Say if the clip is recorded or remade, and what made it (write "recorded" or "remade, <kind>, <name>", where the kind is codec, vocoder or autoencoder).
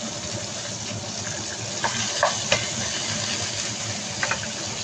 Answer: recorded